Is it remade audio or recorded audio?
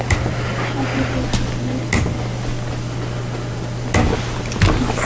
recorded